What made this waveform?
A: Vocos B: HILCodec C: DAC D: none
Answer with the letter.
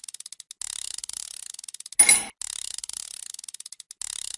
D